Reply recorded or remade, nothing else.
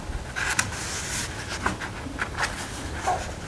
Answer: recorded